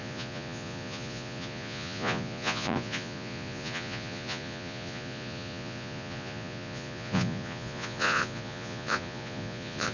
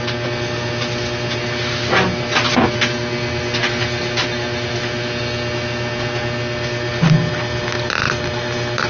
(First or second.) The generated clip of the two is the first